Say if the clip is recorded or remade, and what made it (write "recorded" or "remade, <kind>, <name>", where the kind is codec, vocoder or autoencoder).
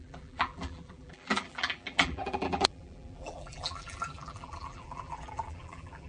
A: remade, vocoder, BigVGAN v2